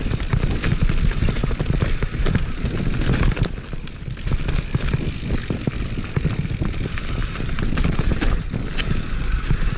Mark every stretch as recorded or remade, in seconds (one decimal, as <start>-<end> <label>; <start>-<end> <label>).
0.0-7.2 recorded; 7.2-8.3 remade; 8.3-9.8 recorded